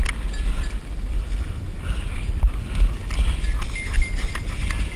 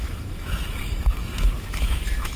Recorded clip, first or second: first